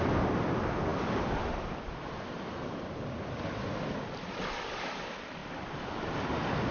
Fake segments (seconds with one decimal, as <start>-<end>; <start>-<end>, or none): 0.9-4.4; 5.4-6.0